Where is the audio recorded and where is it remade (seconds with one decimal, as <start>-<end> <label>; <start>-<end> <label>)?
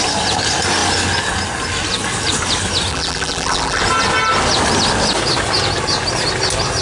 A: 0.0-2.9 recorded; 2.9-3.8 remade; 3.8-6.8 recorded